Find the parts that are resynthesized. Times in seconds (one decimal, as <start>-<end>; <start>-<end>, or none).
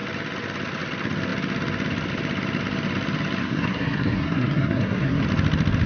3.4-5.2